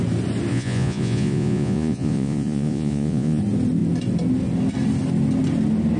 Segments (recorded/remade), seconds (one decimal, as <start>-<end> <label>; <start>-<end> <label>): 0.0-0.5 recorded; 0.5-3.4 remade; 3.4-6.0 recorded